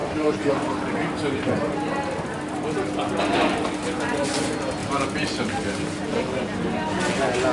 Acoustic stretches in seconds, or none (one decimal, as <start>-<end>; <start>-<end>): 0.5-4.8; 5.5-6.1; 6.6-7.5

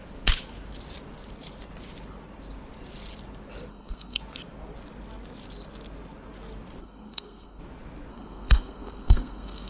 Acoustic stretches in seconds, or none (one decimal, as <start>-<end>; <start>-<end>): 0.0-3.7; 4.2-6.8; 7.6-8.1

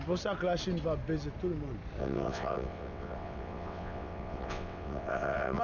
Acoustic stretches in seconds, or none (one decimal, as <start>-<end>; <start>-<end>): 0.0-2.0

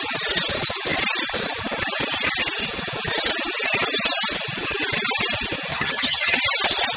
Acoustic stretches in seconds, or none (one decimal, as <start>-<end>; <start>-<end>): 0.0-5.7; 6.4-7.0

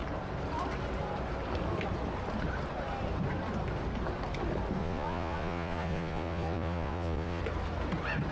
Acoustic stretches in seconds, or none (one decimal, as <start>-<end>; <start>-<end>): 0.0-4.8; 7.4-8.3

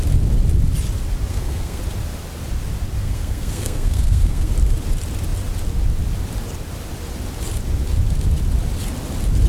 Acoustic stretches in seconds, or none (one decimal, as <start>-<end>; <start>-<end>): 0.0-1.3; 1.8-3.0; 4.5-9.5

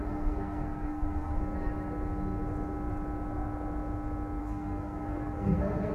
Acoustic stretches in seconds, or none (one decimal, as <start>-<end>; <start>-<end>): 1.4-4.4

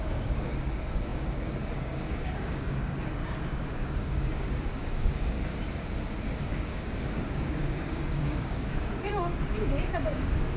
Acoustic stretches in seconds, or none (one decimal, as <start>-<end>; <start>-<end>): 5.5-6.5